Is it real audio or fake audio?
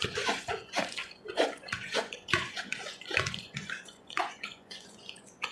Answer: fake